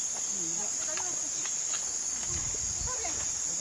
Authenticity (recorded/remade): recorded